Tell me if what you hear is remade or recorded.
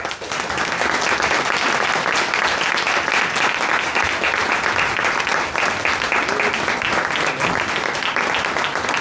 recorded